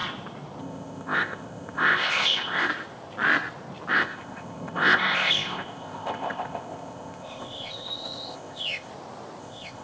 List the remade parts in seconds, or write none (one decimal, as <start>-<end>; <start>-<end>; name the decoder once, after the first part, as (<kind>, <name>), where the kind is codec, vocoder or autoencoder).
0.6-2.7 (codec, ZipCodec); 3.9-8.9; 9.4-9.8